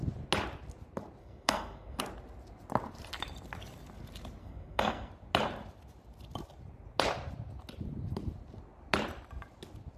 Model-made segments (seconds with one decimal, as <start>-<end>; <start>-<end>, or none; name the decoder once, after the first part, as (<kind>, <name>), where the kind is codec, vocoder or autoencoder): 1.2-2.0 (codec, SNAC); 4.4-5.1